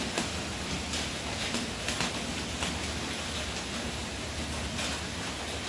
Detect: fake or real real